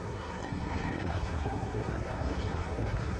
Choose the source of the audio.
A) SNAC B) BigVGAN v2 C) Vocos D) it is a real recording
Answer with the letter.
A